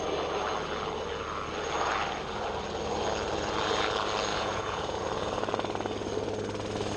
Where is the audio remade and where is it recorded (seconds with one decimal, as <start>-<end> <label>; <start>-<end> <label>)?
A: 0.0-4.3 recorded; 4.3-5.0 remade; 5.0-7.0 recorded